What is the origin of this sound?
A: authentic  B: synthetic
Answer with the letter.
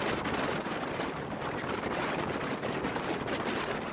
A